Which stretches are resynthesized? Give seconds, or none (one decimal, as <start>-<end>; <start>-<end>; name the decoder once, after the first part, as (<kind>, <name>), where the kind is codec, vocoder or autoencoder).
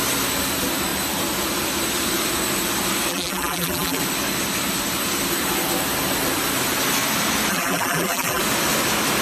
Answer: 3.1-4.0 (vocoder, BigVGAN v2); 7.5-8.4